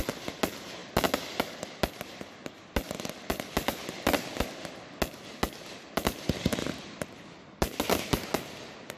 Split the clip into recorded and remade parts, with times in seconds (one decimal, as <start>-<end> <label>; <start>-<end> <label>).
0.0-9.0 recorded